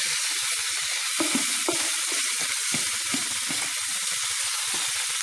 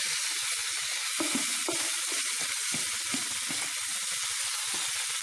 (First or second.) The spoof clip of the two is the first